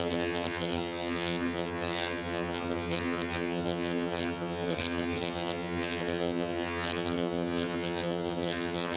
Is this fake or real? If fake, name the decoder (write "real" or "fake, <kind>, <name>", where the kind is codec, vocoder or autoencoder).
fake, vocoder, HiFi-GAN